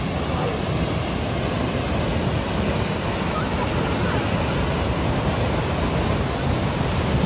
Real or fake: real